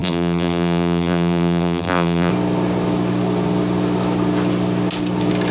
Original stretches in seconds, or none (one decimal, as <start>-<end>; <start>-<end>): 2.3-5.5